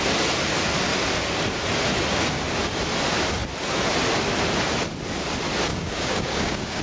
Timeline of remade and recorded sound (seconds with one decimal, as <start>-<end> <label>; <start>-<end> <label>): 0.0-5.7 recorded; 5.7-6.8 remade